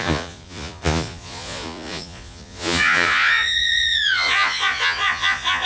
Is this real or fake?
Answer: fake